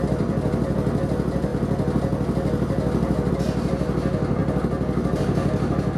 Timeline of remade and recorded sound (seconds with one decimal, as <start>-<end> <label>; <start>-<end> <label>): 0.0-6.0 recorded